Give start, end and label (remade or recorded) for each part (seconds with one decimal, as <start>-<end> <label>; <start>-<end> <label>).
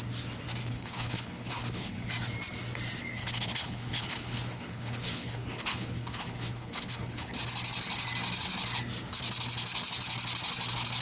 0.0-0.6 recorded; 0.6-2.1 remade; 2.1-3.2 recorded; 3.2-7.4 remade; 7.4-11.0 recorded